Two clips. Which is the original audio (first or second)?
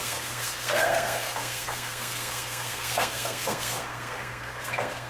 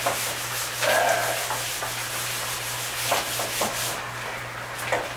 second